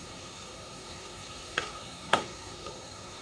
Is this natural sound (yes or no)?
no